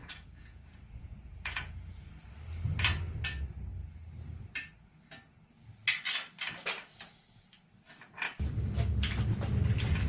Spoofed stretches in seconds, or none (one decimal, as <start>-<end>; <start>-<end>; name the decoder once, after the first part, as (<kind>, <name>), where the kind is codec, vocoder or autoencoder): 0.0-2.1 (vocoder, Vocos)